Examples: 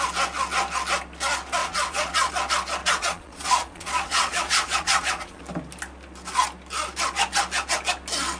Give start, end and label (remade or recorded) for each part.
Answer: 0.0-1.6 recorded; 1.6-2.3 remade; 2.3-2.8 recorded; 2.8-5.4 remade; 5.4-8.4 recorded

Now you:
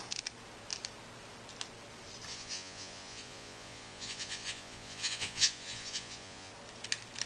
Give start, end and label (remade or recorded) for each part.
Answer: 0.0-2.3 recorded; 2.3-6.5 remade; 6.5-7.3 recorded

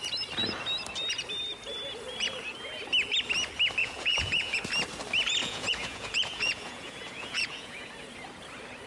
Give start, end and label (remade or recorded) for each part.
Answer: 0.0-3.8 recorded; 3.8-4.6 remade; 4.6-5.4 recorded; 5.4-7.9 remade; 7.9-8.9 recorded

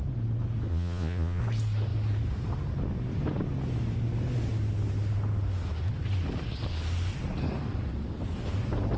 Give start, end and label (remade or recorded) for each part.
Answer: 0.0-0.7 recorded; 0.7-1.4 remade; 1.4-9.0 recorded

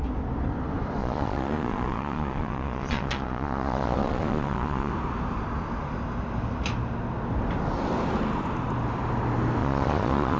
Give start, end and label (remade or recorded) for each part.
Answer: 0.0-1.0 recorded; 1.0-4.9 remade; 4.9-9.6 recorded; 9.6-10.4 remade

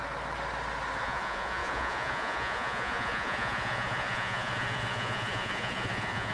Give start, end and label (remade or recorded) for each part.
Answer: 0.0-1.0 recorded; 1.0-6.3 remade

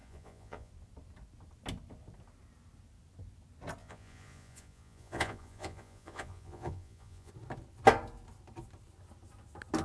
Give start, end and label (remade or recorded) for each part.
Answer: 0.0-0.7 remade; 0.7-3.8 recorded; 3.8-7.3 remade; 7.3-9.8 recorded